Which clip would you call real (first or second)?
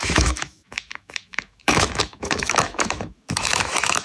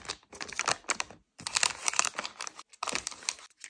second